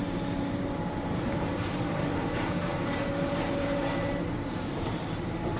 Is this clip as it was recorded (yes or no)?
no